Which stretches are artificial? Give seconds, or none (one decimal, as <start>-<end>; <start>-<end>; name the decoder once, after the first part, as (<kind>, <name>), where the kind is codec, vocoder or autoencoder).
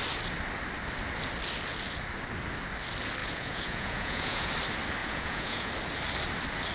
3.2-4.5 (vocoder, Vocos); 5.0-5.7